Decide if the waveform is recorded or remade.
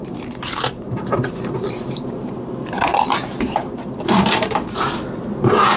remade